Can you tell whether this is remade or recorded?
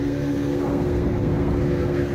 remade